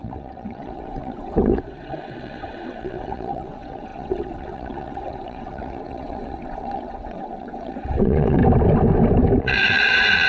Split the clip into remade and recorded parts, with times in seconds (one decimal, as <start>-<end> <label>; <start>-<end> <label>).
0.0-8.4 remade; 8.4-9.4 recorded; 9.4-10.3 remade